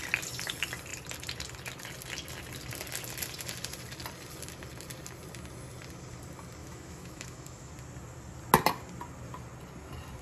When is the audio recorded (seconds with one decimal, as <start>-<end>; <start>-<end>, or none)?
0.0-6.6; 7.7-10.2